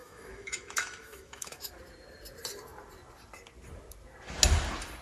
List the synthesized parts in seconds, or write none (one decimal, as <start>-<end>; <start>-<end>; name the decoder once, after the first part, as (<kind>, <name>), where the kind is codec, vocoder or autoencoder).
0.0-1.7 (autoencoder, DAC-VAE)